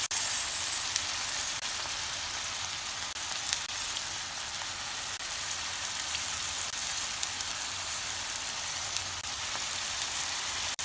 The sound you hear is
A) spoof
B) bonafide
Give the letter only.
B